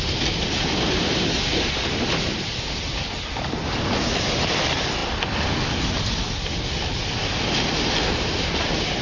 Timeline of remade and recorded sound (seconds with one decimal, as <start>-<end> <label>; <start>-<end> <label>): 0.0-9.0 recorded